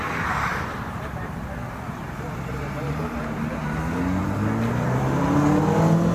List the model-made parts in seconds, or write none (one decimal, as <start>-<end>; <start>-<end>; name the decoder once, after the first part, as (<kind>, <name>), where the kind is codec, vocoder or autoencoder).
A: 0.5-1.4 (vocoder, BigVGAN v2); 2.0-3.6